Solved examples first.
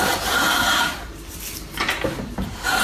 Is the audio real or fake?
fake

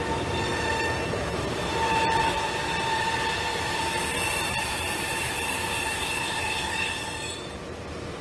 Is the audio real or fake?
fake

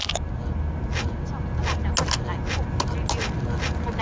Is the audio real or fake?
real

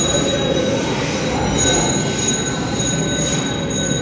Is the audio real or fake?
real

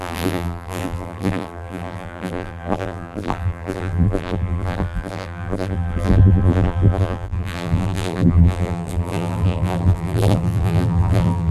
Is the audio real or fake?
fake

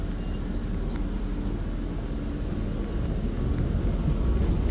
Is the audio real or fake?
real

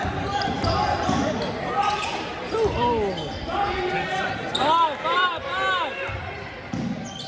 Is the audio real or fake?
fake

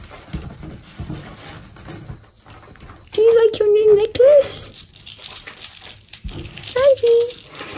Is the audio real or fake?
real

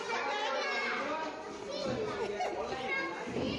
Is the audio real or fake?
real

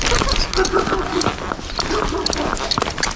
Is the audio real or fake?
real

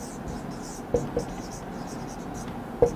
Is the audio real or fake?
real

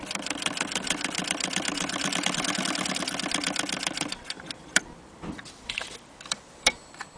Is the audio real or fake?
fake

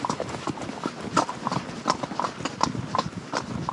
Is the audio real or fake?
real